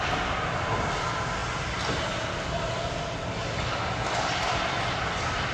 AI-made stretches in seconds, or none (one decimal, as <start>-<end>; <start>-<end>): none

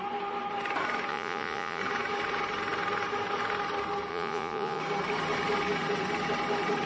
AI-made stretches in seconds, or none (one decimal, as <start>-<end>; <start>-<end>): 1.1-1.8; 4.1-4.8

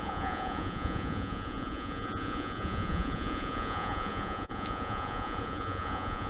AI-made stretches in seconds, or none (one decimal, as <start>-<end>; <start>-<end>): 0.0-6.3

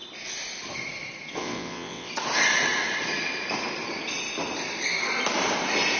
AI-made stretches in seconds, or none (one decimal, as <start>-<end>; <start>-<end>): 1.4-2.1

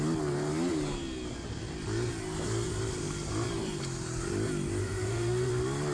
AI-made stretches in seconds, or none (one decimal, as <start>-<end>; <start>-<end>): 4.8-5.5

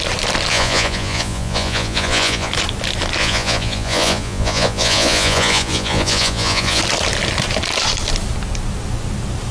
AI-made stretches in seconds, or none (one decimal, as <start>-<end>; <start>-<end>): 0.5-2.5; 3.2-6.8

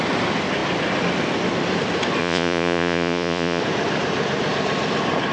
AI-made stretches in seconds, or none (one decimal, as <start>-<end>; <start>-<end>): 2.2-3.6

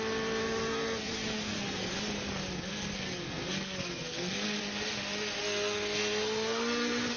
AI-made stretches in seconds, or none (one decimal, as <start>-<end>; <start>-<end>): 0.4-1.9; 2.4-4.6; 5.4-7.2